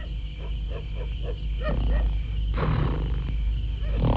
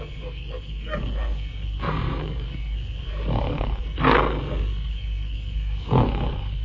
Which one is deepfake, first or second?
second